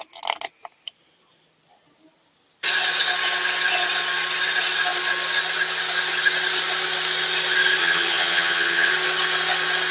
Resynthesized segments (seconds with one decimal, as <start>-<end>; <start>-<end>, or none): 7.8-8.9

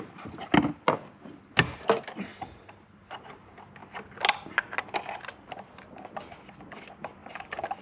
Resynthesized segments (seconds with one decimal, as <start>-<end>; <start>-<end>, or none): 2.3-3.4; 7.2-7.8

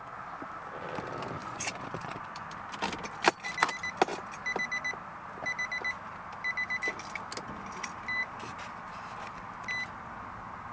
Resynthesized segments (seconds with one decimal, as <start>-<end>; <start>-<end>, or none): 1.4-2.5

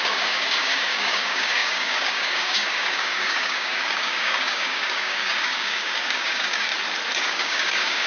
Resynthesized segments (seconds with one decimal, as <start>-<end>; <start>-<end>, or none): 0.0-6.7; 7.2-8.1

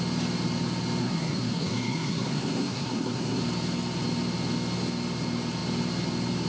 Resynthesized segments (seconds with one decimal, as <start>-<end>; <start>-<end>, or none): 1.0-3.4

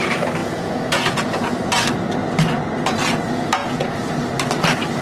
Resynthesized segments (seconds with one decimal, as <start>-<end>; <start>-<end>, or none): 0.4-1.5; 3.6-4.1

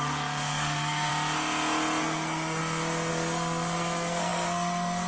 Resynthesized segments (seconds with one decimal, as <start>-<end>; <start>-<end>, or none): 0.0-1.1; 2.0-2.6; 3.1-5.1